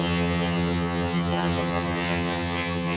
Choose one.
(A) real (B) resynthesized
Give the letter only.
B